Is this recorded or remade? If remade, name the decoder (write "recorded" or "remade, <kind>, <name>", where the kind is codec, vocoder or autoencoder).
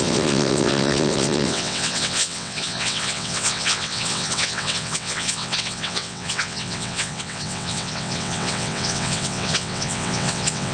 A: remade, vocoder, WaveNeXt